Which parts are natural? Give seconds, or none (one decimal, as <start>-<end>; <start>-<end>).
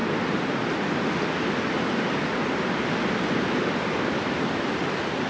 0.0-5.3